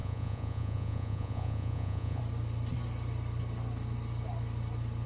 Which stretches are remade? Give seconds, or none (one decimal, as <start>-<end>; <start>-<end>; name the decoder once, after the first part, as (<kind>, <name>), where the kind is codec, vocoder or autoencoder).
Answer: 0.0-2.2 (vocoder, Vocos)